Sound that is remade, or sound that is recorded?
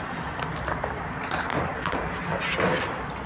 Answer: recorded